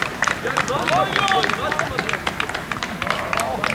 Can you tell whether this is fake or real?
real